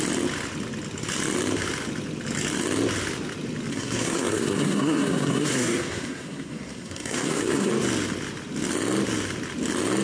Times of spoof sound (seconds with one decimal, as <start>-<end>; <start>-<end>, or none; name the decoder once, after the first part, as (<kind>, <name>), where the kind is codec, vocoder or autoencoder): 3.7-7.7 (codec, SNAC)